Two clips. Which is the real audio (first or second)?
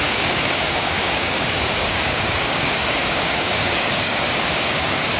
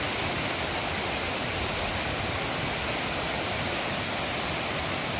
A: second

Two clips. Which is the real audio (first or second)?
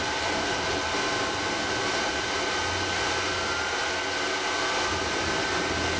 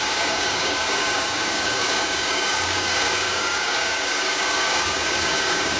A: first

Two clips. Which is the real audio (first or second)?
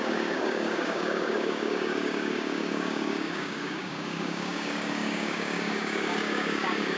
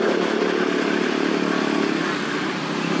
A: second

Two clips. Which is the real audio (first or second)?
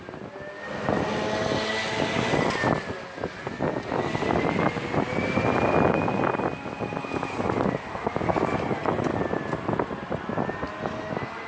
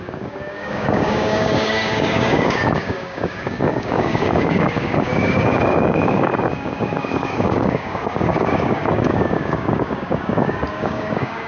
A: first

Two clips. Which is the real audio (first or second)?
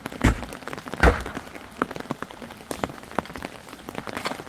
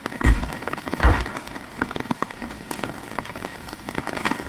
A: first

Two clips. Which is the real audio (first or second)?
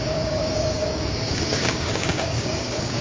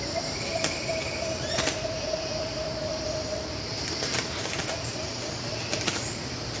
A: second